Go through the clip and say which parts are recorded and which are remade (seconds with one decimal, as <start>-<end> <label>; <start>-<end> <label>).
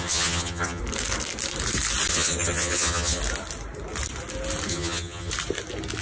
0.0-0.8 remade; 0.8-2.1 recorded; 2.1-3.2 remade; 3.2-4.7 recorded; 4.7-5.3 remade; 5.3-6.0 recorded